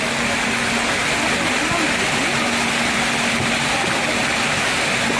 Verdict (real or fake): real